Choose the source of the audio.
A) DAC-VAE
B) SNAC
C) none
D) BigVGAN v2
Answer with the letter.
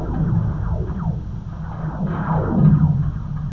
C